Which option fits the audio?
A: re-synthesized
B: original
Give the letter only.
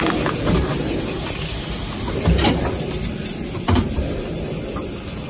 B